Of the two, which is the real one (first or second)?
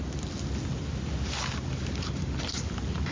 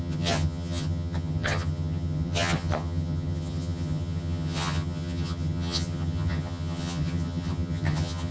first